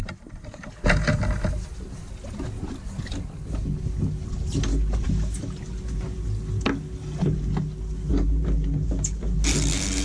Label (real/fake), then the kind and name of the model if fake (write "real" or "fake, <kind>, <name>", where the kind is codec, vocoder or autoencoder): real